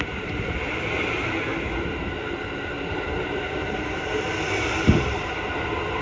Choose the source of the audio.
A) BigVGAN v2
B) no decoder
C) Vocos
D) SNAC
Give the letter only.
B